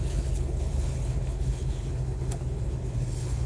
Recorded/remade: remade